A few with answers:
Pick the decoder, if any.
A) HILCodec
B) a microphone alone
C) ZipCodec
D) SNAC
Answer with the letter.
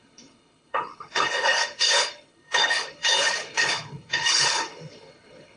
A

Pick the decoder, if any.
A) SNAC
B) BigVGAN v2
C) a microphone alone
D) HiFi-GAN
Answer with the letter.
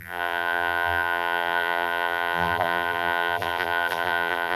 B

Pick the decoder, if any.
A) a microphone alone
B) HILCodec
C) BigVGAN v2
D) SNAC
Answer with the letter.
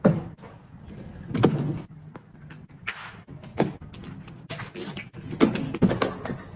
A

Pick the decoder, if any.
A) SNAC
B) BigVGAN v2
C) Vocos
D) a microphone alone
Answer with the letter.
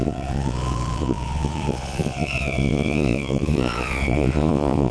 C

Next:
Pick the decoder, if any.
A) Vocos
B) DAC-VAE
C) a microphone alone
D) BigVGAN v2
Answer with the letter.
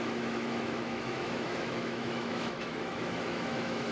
B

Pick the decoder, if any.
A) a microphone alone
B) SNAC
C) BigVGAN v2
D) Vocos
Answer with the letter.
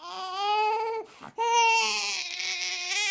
A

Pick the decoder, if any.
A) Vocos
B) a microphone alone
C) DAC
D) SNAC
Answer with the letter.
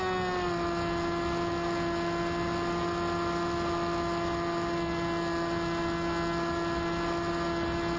B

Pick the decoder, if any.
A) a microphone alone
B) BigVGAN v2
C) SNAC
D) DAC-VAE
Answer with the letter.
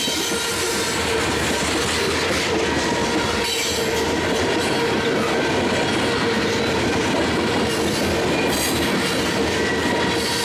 A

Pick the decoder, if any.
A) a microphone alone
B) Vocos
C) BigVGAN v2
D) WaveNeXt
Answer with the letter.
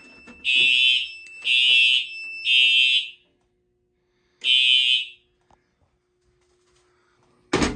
A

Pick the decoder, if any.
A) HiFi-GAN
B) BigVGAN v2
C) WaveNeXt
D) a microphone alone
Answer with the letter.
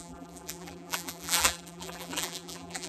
B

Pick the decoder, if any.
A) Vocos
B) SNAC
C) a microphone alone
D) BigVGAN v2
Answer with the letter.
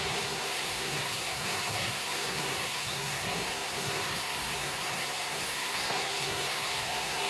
B